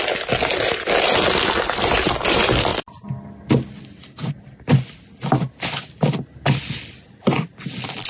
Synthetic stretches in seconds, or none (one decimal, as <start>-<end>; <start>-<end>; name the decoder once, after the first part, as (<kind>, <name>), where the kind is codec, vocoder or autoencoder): none